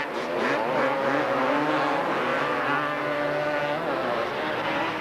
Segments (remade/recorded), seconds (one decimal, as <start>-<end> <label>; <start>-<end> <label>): 0.0-5.0 recorded